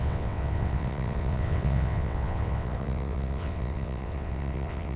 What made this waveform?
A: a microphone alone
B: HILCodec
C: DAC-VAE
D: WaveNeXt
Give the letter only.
D